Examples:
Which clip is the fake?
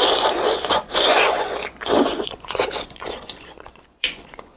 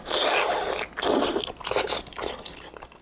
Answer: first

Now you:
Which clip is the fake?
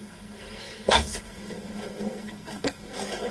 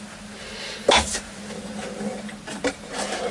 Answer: first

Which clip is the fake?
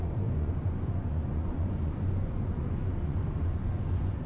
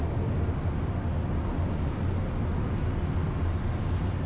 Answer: first